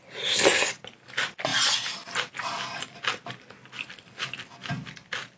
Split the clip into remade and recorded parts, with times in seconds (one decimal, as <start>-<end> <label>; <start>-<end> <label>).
0.0-5.4 recorded